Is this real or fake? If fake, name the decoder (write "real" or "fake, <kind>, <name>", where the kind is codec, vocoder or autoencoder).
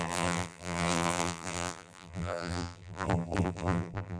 fake, vocoder, BigVGAN v2